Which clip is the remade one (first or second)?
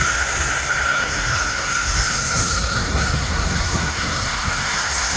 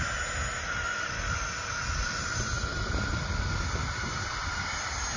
first